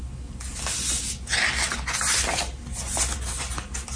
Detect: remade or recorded recorded